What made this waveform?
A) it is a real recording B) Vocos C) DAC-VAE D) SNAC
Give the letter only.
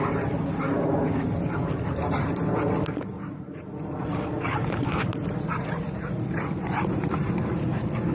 A